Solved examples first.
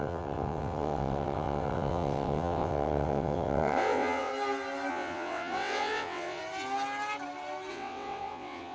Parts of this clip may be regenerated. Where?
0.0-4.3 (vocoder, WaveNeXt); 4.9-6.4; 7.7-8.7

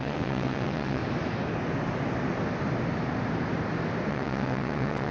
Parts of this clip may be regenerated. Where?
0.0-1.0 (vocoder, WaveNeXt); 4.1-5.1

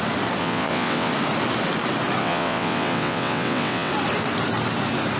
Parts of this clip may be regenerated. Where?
0.4-1.1 (vocoder, WaveNeXt); 2.2-3.9

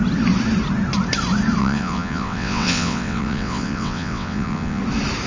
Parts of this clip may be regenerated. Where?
1.6-4.8 (vocoder, WaveNeXt)

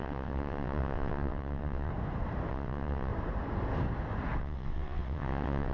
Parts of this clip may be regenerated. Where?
0.0-1.9 (vocoder, WaveNeXt); 2.5-3.1; 4.4-5.7